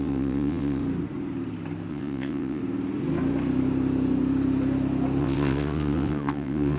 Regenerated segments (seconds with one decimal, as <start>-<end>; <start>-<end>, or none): 0.0-0.8; 1.9-2.6; 5.2-6.8